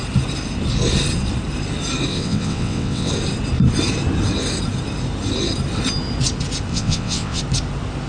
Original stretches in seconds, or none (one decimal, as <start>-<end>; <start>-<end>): 0.0-2.1; 3.1-6.7; 7.4-8.1